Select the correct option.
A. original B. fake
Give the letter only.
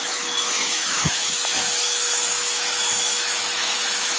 B